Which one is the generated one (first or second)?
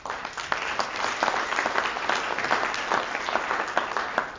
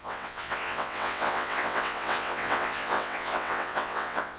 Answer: second